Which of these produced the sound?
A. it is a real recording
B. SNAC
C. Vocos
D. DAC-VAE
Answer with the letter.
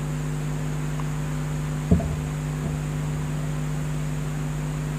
A